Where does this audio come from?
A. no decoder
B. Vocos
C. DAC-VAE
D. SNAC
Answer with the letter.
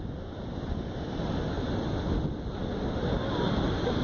A